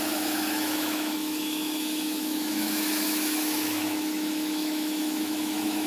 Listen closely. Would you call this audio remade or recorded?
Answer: remade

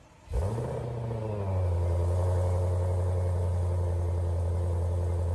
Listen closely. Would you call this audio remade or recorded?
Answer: recorded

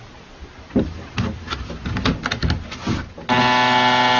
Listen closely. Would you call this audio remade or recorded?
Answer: recorded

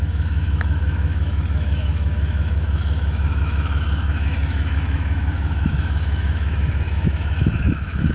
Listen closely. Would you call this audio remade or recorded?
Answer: remade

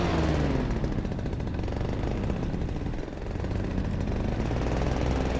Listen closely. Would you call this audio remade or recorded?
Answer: recorded